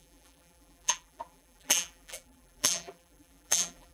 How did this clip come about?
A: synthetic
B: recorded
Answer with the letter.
A